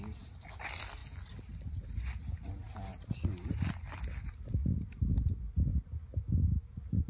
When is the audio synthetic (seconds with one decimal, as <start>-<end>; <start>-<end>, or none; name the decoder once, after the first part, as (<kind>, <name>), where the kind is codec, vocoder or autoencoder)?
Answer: none